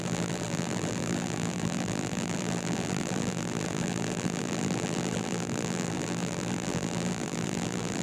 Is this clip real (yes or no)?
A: no